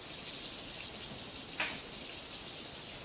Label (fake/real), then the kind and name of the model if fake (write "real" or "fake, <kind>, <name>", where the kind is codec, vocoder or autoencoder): real